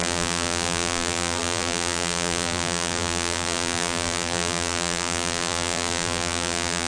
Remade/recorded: remade